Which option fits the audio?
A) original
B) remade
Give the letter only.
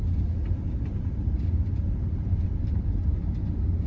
A